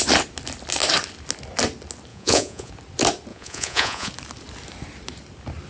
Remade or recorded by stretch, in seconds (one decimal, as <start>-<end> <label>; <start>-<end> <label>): 0.0-2.1 recorded; 2.1-2.7 remade; 2.7-3.3 recorded; 3.3-4.1 remade; 4.1-5.7 recorded